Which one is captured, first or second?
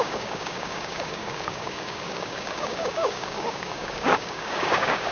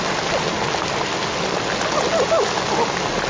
second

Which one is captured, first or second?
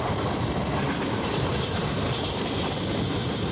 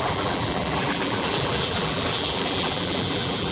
first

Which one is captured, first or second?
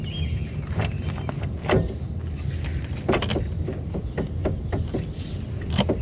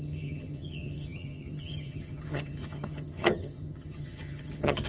first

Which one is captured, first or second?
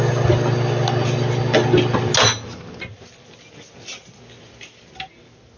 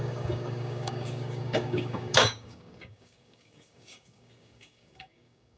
first